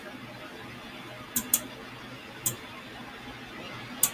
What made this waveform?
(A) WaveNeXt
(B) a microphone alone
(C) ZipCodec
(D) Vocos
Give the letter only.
B